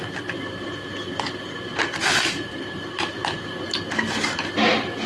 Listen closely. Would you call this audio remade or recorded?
recorded